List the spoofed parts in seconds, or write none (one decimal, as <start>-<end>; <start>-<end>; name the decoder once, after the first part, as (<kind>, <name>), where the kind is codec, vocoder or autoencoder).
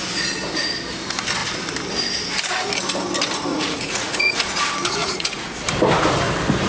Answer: 3.5-4.6 (vocoder, Vocos); 5.0-5.5